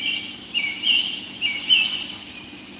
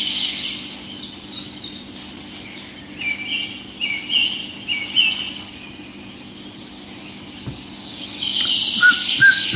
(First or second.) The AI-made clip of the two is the first